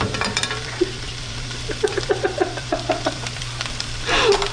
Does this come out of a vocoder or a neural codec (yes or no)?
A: yes